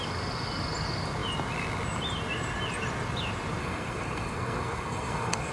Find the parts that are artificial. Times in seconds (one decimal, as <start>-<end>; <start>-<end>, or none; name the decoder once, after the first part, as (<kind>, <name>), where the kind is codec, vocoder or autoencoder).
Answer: 3.6-5.5 (codec, SNAC)